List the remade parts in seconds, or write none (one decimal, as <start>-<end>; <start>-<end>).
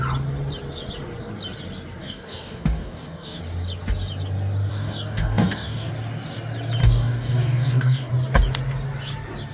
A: 2.0-3.4; 4.7-5.9; 6.8-8.1